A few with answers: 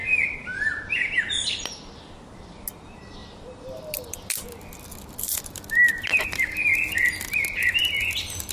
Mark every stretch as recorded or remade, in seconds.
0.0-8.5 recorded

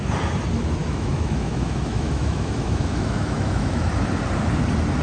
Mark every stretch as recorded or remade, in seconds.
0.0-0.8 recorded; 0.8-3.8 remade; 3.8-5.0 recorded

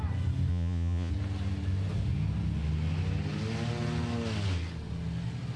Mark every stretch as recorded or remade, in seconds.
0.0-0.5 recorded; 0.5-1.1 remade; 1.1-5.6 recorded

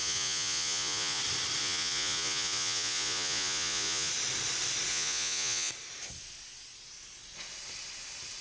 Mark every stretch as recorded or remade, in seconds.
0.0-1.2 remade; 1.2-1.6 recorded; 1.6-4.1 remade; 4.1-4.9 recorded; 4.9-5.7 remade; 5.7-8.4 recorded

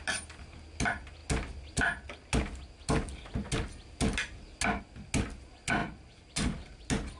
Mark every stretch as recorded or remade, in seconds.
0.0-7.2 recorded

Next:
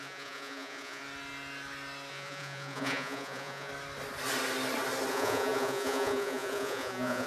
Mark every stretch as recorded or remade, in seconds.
0.0-1.0 remade; 1.0-2.1 recorded; 2.1-3.7 remade; 3.7-5.1 recorded; 5.1-7.3 remade